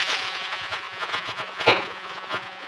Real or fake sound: fake